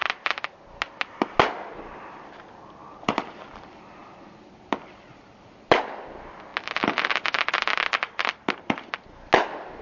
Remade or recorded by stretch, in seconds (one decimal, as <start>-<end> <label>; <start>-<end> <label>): 0.0-9.8 recorded